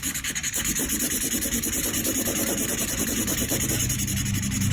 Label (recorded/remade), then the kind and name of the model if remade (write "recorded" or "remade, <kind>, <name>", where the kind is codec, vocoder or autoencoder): recorded